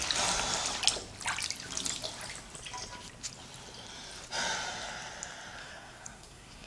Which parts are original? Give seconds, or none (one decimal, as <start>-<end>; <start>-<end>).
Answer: 0.0-5.6